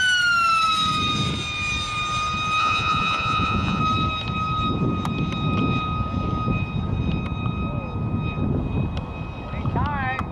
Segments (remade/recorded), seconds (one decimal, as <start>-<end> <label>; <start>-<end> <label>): 0.0-2.6 recorded; 2.6-3.8 remade; 3.8-10.3 recorded

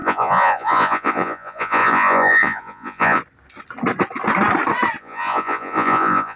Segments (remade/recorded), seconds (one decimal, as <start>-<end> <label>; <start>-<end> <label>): 0.0-3.2 remade; 3.2-5.0 recorded; 5.0-6.4 remade